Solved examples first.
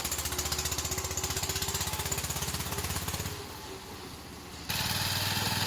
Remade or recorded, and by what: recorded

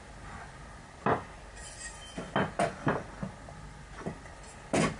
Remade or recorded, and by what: recorded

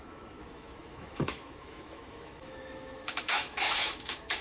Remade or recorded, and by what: remade, autoencoder, DAC-VAE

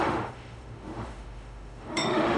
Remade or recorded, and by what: remade, autoencoder, DAC-VAE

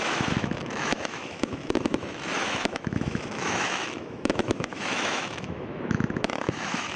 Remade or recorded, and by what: remade, autoencoder, DAC-VAE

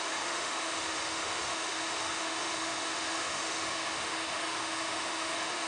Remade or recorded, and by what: remade, autoencoder, DAC-VAE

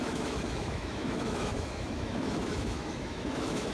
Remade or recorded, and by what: remade, autoencoder, DAC-VAE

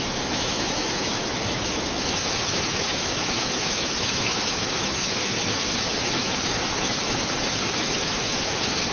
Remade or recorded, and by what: remade, autoencoder, DAC-VAE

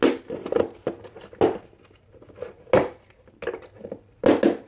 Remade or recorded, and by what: recorded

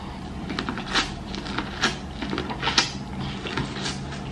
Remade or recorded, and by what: recorded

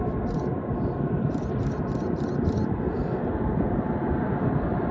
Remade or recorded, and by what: recorded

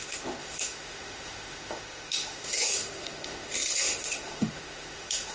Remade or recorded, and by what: remade, autoencoder, DAC-VAE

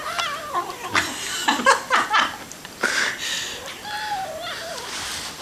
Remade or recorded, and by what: recorded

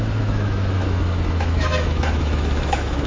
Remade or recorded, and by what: remade, autoencoder, DAC-VAE